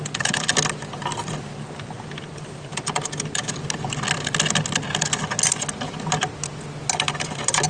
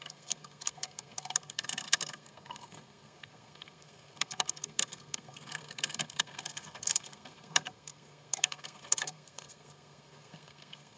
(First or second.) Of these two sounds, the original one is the first